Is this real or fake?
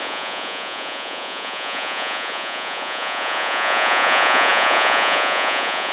fake